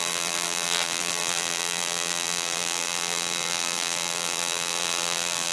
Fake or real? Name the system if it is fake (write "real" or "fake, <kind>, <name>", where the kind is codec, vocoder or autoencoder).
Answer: fake, vocoder, BigVGAN v2